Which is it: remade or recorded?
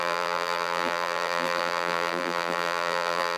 remade